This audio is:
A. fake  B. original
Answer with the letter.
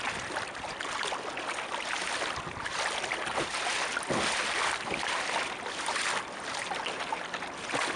B